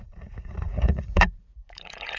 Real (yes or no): no